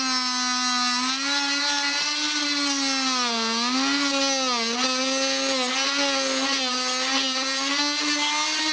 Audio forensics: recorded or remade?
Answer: recorded